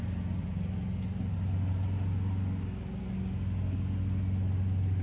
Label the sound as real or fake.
real